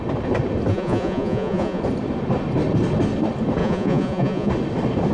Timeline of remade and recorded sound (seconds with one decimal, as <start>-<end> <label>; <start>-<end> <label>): 0.0-0.7 recorded; 0.7-1.8 remade; 1.8-3.6 recorded; 3.6-4.5 remade; 4.5-5.1 recorded